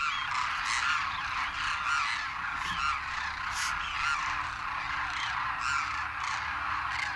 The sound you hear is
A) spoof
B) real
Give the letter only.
B